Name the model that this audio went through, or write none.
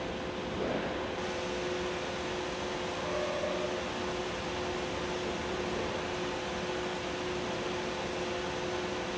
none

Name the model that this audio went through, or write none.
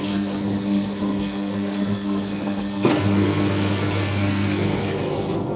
codec, SNAC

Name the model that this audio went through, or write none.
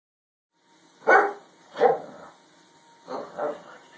none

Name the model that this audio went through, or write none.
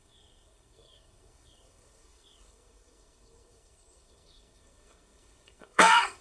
codec, SNAC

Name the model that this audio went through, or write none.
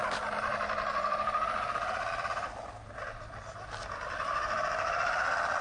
none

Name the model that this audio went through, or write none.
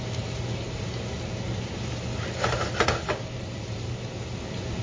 none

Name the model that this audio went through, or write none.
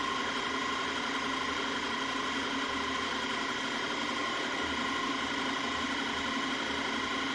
none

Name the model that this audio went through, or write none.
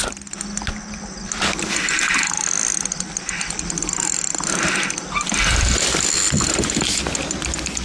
none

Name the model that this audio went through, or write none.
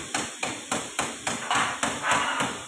none